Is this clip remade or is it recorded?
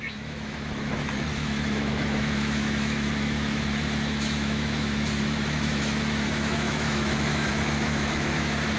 remade